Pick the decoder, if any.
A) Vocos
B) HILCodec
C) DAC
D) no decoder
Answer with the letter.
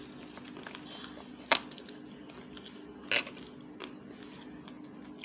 D